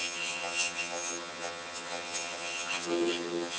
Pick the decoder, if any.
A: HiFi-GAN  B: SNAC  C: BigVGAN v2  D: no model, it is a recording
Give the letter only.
A